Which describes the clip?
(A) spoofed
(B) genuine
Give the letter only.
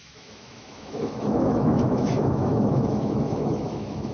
A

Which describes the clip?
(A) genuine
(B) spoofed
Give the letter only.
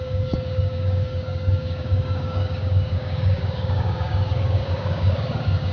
B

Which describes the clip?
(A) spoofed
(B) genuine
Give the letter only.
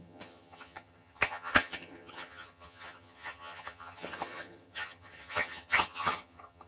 A